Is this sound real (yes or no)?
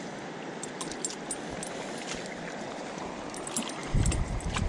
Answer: yes